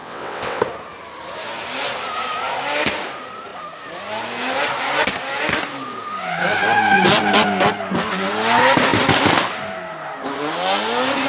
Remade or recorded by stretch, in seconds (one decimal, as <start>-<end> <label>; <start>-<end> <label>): 0.0-0.6 remade; 0.6-11.3 recorded

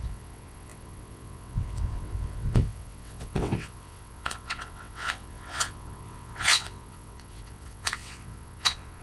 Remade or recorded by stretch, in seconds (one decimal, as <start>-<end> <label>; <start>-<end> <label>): 0.0-9.0 remade

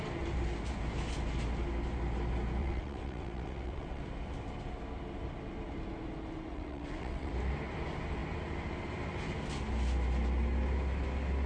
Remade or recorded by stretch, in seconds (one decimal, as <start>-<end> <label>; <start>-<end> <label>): 0.0-2.6 recorded; 2.6-4.0 remade; 4.0-6.5 recorded; 6.5-7.3 remade; 7.3-11.5 recorded

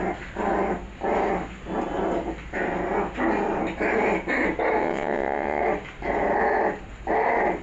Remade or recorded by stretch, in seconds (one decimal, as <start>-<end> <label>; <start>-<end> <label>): 0.0-4.8 recorded; 4.8-5.6 remade; 5.6-7.6 recorded

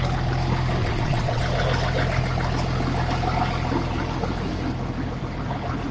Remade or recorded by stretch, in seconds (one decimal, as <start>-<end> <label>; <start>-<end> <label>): 0.0-0.8 recorded; 0.8-1.4 remade; 1.4-5.9 recorded

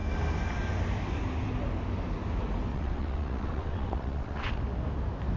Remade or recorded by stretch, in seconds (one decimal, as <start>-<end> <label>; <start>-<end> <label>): 0.0-2.7 recorded; 2.7-4.6 remade; 4.6-5.4 recorded

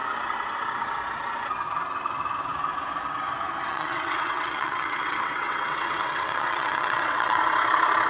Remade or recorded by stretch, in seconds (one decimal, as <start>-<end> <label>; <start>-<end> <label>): 0.0-3.7 recorded; 3.7-7.4 remade; 7.4-8.1 recorded